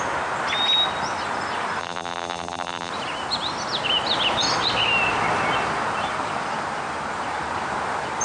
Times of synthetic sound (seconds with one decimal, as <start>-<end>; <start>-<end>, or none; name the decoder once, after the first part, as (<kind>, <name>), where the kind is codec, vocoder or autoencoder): 1.8-2.9 (vocoder, BigVGAN v2)